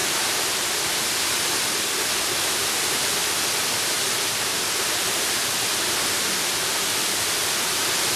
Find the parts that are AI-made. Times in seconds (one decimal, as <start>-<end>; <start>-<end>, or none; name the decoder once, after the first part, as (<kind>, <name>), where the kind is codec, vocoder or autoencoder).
none